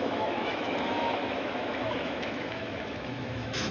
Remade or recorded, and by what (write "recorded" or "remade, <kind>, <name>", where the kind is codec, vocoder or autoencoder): remade, autoencoder, DAC-VAE